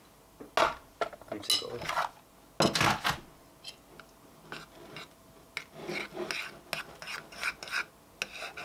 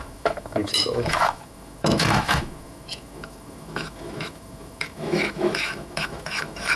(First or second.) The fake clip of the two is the second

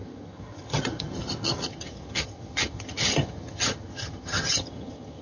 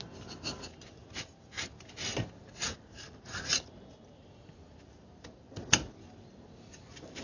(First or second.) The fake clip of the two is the first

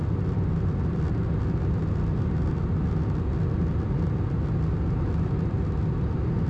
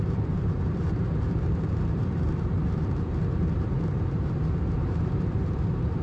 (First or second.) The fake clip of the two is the second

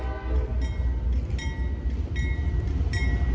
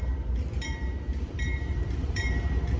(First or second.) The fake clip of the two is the second